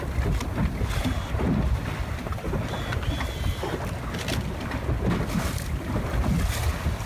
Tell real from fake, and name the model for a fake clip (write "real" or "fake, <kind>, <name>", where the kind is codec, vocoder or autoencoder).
real